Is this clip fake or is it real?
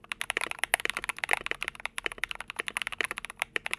real